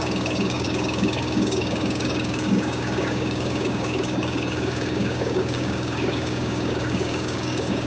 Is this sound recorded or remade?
remade